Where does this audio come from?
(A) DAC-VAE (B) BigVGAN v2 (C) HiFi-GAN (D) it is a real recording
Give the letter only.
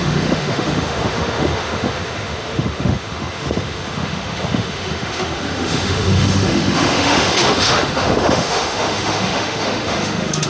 A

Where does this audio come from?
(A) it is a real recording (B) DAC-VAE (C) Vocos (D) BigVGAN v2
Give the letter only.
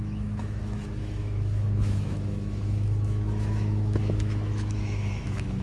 B